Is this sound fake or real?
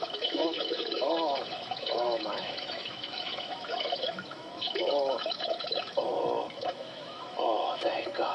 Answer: fake